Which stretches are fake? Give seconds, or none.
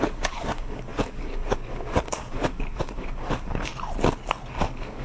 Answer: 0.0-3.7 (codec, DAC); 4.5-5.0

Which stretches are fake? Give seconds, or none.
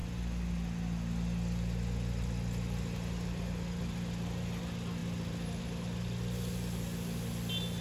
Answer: none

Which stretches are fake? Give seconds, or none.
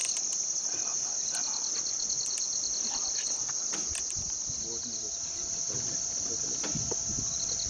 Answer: none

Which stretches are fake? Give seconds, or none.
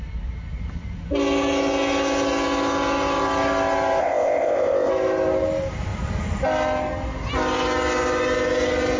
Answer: 4.0-4.9 (codec, ZipCodec)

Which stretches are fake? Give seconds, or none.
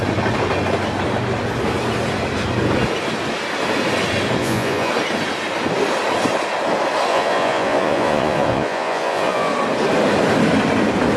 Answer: 4.4-4.9 (vocoder, Vocos); 7.1-9.5